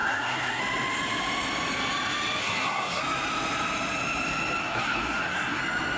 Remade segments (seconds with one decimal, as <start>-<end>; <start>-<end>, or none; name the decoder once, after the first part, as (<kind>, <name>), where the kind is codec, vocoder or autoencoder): 0.0-0.6 (codec, SNAC); 2.4-3.0; 4.6-5.6